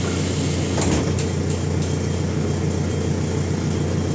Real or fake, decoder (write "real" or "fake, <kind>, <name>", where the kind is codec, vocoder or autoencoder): real